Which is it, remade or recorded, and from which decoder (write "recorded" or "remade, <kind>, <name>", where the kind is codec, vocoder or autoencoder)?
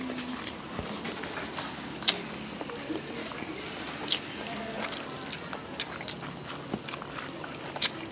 recorded